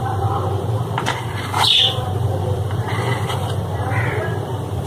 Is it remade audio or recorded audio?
remade